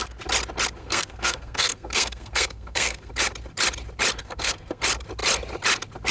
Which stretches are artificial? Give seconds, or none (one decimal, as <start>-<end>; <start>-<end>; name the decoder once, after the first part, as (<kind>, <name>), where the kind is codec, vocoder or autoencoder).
0.8-3.1 (codec, SNAC); 4.2-4.8